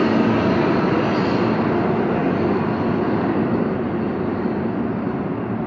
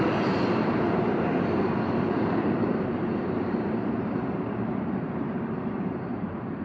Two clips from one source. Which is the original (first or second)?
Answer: first